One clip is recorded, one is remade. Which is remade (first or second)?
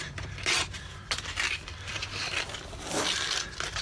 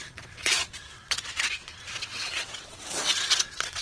second